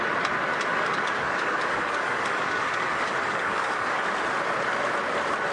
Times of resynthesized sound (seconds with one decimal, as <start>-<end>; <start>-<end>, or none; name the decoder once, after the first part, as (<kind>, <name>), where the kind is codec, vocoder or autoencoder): 0.7-4.0 (codec, DAC)